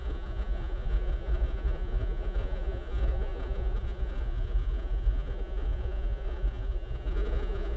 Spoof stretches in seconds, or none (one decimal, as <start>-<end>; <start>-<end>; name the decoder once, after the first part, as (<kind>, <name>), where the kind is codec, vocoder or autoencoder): 0.0-7.8 (vocoder, Vocos)